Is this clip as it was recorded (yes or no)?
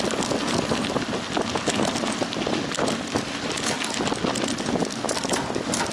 yes